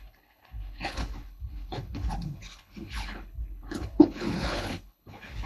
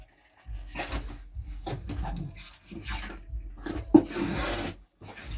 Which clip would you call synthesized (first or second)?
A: first